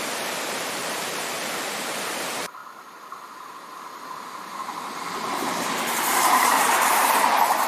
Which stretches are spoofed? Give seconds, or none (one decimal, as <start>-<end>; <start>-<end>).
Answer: 0.0-2.6; 3.3-7.7